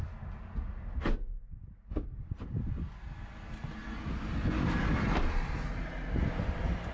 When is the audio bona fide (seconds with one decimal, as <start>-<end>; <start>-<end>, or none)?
0.0-6.9